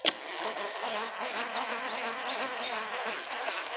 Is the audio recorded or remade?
recorded